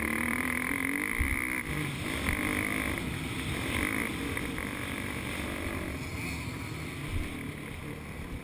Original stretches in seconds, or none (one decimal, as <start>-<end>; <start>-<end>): 0.0-8.4